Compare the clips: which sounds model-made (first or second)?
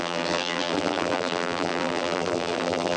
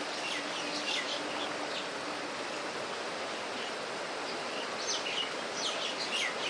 first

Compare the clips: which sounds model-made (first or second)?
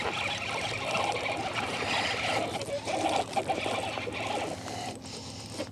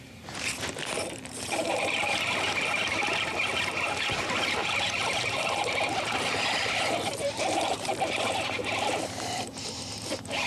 second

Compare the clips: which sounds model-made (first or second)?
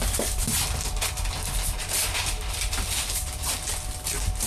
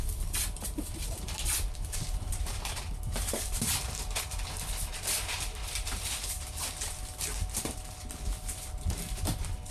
second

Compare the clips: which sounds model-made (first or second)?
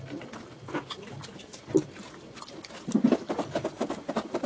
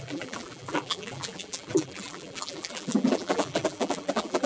second